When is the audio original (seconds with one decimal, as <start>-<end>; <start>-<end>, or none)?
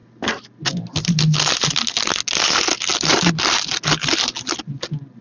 0.0-5.2